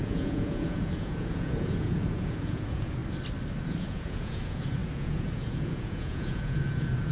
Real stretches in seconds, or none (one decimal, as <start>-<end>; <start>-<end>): 3.0-3.6